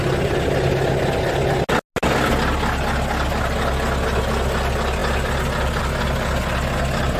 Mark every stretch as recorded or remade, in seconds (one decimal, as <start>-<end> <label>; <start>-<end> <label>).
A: 0.0-7.2 recorded